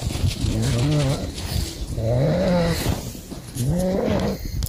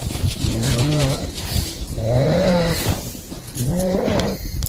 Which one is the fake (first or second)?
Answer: second